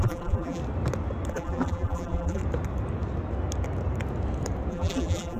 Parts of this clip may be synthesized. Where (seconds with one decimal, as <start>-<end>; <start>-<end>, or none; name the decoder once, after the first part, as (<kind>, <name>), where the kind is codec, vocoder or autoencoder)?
0.0-0.6 (vocoder, BigVGAN v2); 1.3-2.4; 4.7-5.4